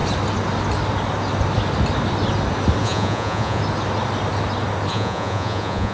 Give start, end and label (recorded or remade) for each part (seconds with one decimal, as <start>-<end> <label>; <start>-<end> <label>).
0.0-2.8 recorded; 2.8-3.6 remade; 3.6-4.9 recorded; 4.9-5.9 remade